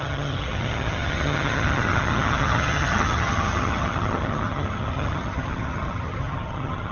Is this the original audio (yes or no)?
no